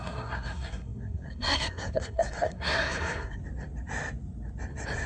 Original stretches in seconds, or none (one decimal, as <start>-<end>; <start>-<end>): 3.4-5.1